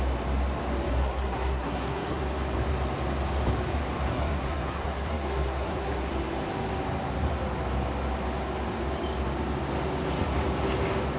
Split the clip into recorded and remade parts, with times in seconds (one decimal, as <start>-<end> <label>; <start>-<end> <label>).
0.0-0.9 recorded; 0.9-2.2 remade; 2.2-4.1 recorded; 4.1-6.1 remade; 6.1-11.2 recorded